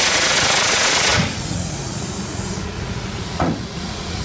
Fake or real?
fake